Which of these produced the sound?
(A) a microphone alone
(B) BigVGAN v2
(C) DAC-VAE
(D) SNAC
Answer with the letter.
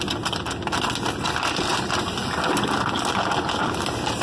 A